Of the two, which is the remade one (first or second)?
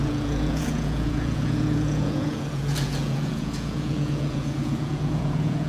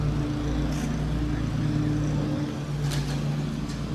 first